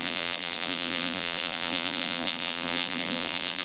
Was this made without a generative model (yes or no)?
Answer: no